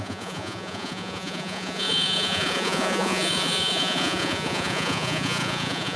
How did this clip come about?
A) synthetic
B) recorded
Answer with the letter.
A